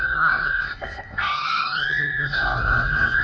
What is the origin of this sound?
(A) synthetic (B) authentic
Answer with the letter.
A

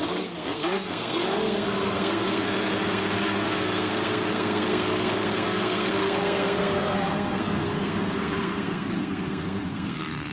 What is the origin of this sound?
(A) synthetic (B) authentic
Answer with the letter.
A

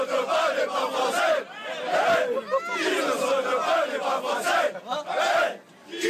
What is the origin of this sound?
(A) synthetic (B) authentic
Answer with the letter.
B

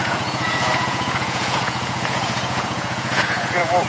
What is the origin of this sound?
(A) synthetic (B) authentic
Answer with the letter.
A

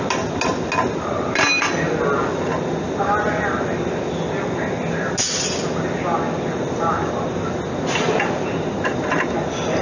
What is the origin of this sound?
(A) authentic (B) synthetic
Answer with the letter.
A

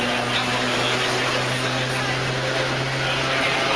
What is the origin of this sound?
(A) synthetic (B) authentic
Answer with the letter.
B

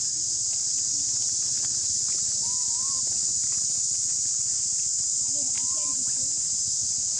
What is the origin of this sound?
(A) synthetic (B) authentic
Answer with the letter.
B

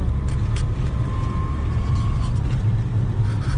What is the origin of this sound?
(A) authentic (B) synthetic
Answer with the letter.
A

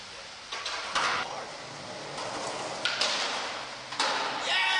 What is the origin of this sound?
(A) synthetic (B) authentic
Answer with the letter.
B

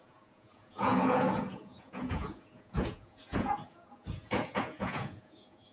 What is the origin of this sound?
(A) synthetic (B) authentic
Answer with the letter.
A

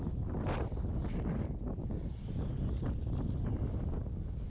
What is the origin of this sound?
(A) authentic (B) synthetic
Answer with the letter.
A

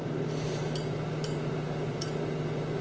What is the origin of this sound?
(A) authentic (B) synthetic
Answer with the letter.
A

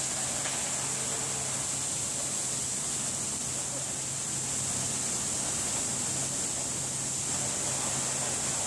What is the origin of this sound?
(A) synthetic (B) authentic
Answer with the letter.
B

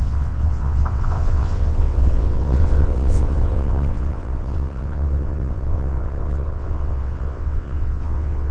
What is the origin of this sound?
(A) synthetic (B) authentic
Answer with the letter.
A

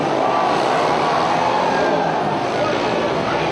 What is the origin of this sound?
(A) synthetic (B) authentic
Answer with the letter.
B